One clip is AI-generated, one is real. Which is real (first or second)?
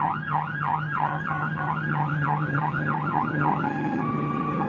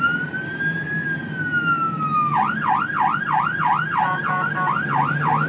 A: second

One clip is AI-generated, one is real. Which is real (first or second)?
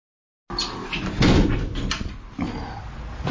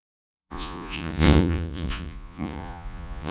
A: first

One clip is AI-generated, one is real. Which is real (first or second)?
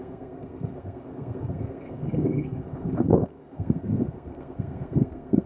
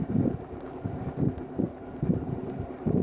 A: second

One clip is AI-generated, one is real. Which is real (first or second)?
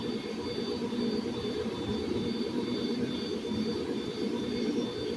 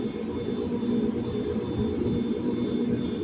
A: second